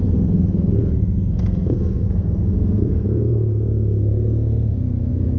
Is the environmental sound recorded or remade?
remade